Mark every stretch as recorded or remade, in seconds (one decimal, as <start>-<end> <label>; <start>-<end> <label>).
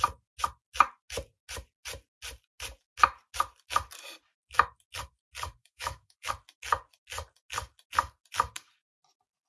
0.0-5.6 recorded; 5.6-6.3 remade; 6.3-9.5 recorded